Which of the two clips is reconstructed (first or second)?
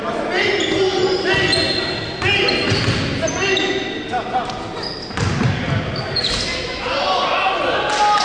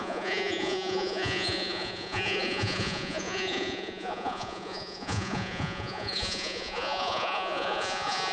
second